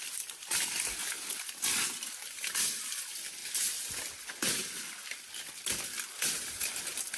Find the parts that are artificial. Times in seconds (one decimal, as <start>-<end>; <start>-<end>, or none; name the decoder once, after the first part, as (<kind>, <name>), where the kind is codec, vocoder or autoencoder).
0.0-1.0 (vocoder, BigVGAN v2); 1.7-3.4; 6.6-7.2